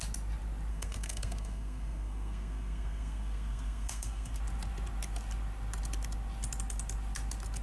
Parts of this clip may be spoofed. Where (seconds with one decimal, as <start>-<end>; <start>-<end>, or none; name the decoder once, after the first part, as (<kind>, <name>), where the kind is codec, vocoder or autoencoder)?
0.7-4.4 (codec, SNAC)